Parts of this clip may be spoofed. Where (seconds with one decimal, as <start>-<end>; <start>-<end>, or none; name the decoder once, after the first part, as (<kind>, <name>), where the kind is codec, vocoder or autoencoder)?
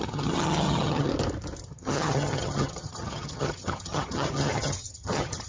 0.0-1.1 (vocoder, HiFi-GAN); 1.6-5.5